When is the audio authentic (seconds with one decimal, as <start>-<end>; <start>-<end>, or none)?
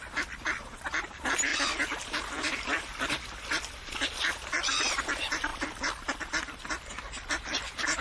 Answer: 1.5-2.8